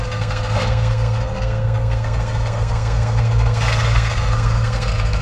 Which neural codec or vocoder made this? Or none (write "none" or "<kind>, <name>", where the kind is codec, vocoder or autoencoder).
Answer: codec, SNAC